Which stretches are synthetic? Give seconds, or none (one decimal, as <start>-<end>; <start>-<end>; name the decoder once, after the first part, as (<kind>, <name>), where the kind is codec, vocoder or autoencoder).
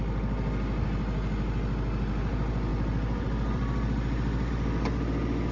2.7-4.5 (vocoder, BigVGAN v2)